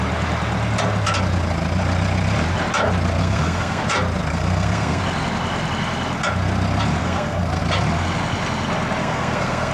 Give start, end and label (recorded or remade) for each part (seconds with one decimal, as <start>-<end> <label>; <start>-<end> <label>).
0.0-3.2 recorded; 3.2-3.8 remade; 3.8-4.3 recorded; 4.3-5.0 remade; 5.0-7.0 recorded; 7.0-7.6 remade; 7.6-9.0 recorded; 9.0-9.7 remade